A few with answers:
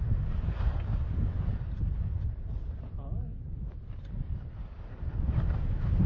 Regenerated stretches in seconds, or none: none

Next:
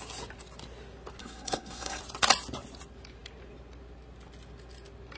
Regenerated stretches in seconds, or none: 1.2-2.0 (codec, SNAC)

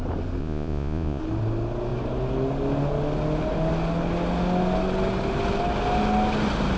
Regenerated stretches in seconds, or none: 0.4-1.2 (vocoder, Vocos)

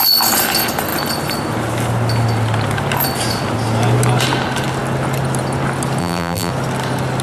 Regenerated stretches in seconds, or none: 6.0-6.5 (vocoder, BigVGAN v2)

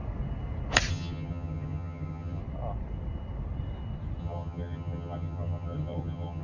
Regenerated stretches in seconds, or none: 0.9-2.4 (vocoder, HiFi-GAN); 4.2-6.4

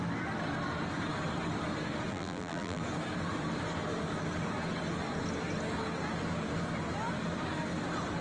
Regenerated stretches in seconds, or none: 2.1-2.8 (vocoder, BigVGAN v2)

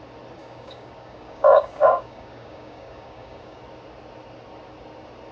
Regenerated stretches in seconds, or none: 0.4-3.6 (codec, DAC)